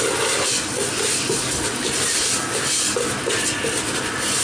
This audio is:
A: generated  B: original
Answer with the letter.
B